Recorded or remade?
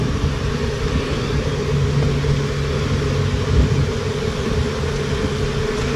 recorded